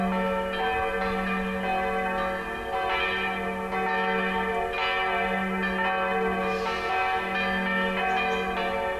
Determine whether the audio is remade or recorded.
recorded